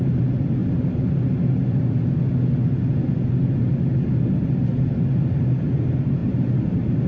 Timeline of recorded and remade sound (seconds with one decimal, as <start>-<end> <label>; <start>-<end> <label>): 0.0-7.1 recorded